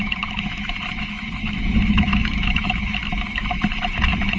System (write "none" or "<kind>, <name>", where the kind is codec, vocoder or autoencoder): autoencoder, DAC-VAE